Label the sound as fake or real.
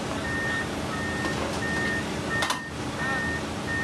real